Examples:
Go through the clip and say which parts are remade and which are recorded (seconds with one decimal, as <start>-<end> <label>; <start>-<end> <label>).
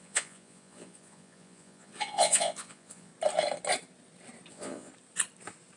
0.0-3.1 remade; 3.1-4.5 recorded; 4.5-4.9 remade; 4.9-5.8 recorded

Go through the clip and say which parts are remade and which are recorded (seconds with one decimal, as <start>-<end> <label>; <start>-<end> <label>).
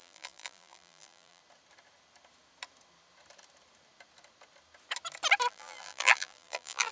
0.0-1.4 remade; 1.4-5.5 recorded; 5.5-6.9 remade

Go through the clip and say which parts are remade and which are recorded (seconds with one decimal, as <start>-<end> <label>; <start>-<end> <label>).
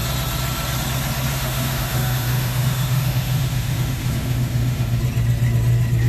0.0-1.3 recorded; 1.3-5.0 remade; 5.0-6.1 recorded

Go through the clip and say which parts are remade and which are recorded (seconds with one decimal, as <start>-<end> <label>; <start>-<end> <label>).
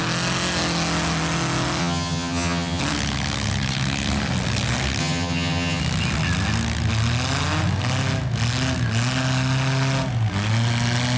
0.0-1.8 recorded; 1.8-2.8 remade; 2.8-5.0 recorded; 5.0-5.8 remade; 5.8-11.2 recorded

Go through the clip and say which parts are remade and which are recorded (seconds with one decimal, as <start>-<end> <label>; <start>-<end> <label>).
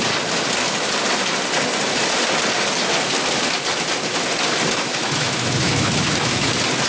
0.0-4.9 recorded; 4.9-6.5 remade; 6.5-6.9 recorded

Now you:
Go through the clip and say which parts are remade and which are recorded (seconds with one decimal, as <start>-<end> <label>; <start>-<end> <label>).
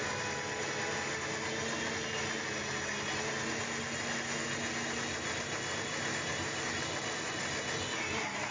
0.0-8.5 recorded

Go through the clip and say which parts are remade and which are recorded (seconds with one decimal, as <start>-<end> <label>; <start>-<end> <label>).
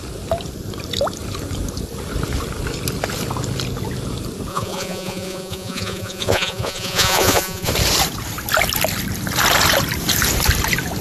0.0-4.5 recorded; 4.5-7.7 remade; 7.7-11.0 recorded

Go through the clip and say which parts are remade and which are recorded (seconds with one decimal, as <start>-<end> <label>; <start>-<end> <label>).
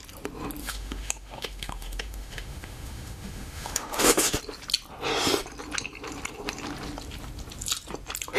0.0-0.6 recorded; 0.6-4.4 remade; 4.4-8.4 recorded